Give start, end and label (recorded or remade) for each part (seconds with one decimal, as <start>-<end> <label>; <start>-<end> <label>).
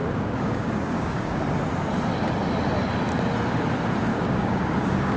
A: 0.0-1.4 remade; 1.4-4.1 recorded; 4.1-5.2 remade